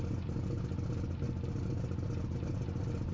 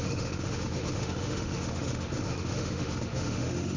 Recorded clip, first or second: first